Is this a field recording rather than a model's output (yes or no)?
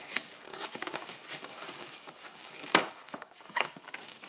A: no